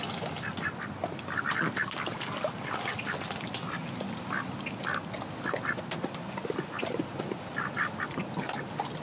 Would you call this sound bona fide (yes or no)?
yes